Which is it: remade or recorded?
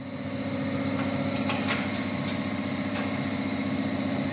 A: recorded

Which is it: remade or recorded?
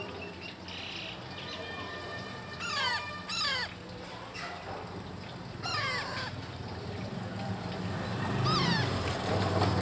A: recorded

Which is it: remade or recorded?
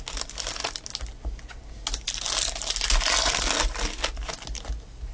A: recorded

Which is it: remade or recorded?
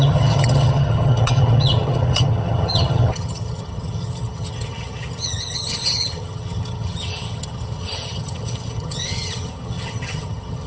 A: remade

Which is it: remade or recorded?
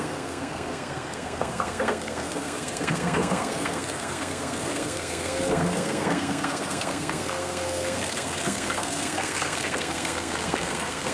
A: remade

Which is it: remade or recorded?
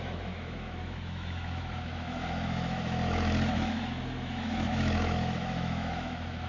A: remade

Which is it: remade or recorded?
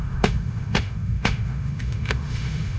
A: remade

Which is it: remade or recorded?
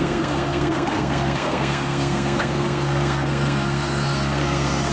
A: remade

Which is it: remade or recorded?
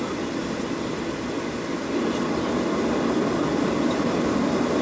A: recorded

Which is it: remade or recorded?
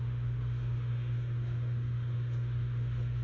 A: remade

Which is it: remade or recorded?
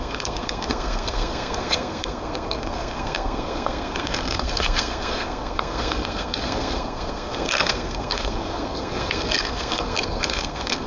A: remade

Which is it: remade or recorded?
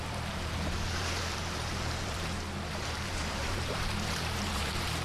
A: remade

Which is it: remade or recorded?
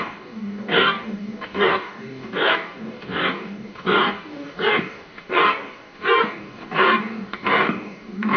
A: remade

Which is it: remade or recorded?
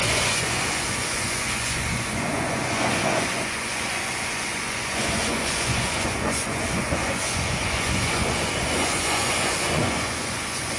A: remade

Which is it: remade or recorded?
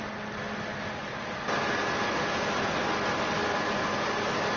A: recorded